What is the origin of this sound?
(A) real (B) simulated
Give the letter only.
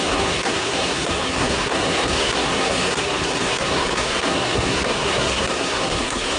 B